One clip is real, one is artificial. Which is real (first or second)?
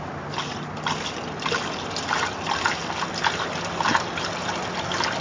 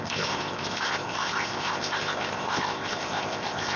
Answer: first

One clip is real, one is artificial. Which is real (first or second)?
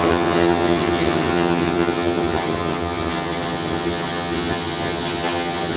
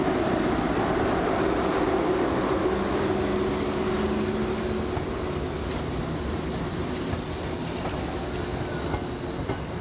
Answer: second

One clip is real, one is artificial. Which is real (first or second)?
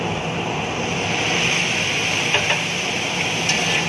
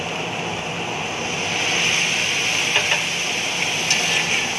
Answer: second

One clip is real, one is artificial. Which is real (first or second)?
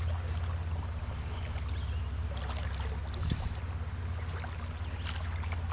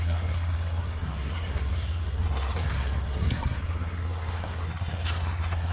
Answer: first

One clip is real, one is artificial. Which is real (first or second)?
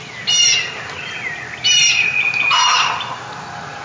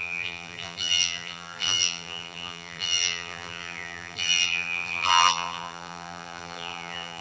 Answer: first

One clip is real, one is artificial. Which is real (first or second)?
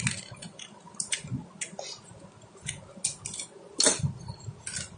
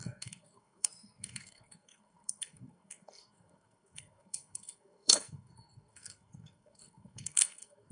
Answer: first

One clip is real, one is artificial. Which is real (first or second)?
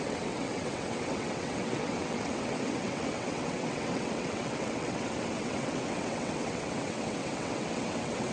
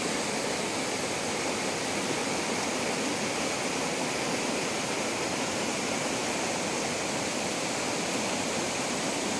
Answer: second